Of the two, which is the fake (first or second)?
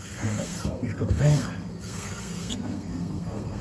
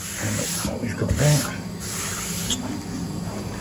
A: first